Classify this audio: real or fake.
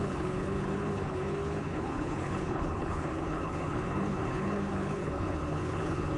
fake